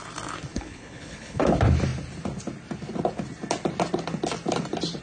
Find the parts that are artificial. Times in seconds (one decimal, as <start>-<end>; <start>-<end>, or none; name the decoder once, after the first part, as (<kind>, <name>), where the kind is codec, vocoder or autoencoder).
0.5-1.4 (codec, HILCodec)